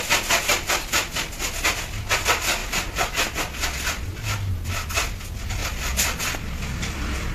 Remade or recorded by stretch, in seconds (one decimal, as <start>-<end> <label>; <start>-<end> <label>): 0.0-5.6 recorded; 5.6-7.3 remade